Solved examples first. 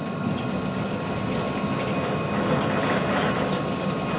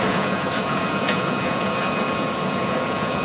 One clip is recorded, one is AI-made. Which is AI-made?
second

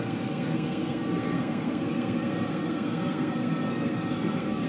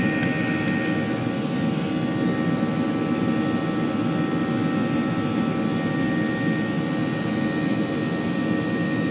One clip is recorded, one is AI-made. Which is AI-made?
first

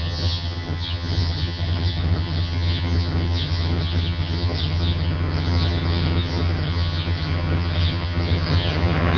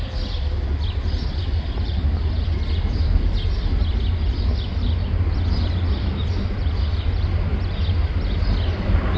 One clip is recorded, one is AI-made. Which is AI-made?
first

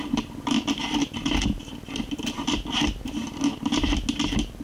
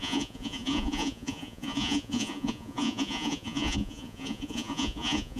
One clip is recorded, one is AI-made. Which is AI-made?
second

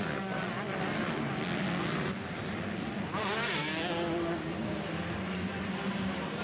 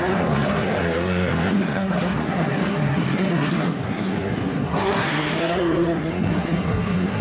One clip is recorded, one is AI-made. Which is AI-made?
second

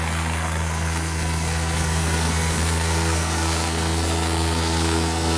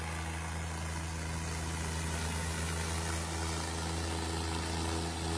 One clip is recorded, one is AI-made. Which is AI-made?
first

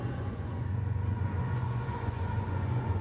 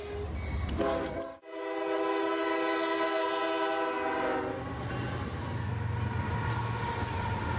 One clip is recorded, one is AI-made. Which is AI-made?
first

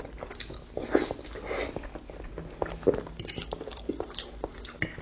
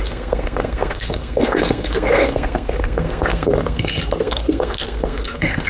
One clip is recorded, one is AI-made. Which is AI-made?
second